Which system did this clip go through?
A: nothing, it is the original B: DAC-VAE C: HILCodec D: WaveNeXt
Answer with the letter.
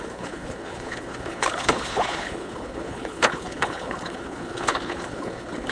C